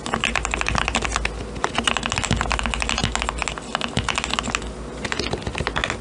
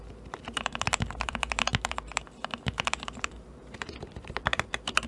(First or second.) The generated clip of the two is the second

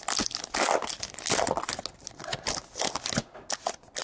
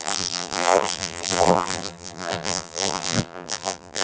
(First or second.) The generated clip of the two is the second